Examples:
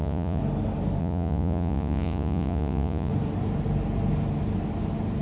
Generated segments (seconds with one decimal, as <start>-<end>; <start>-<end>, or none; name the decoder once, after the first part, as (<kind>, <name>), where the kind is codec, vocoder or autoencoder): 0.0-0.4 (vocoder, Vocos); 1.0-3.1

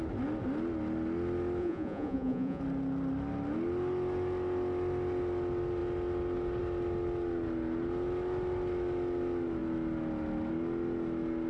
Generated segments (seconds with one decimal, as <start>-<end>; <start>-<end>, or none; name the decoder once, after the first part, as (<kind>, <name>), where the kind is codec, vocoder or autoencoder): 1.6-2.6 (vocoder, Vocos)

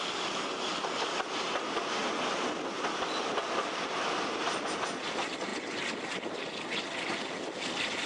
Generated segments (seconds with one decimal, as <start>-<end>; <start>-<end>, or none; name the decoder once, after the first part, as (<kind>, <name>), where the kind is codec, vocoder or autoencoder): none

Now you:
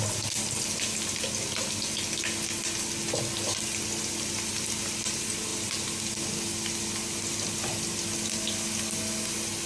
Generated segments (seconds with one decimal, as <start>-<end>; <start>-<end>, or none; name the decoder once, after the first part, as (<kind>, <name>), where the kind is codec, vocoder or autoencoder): none

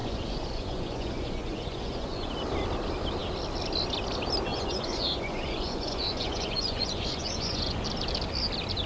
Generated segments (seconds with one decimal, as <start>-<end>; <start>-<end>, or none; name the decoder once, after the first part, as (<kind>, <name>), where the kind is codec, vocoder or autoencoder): 0.0-2.3 (vocoder, Vocos); 4.5-7.8

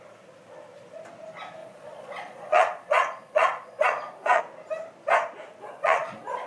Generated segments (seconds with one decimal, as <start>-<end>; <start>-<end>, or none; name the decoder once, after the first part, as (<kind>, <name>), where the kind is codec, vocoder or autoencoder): 1.6-4.4 (vocoder, Vocos); 5.6-6.5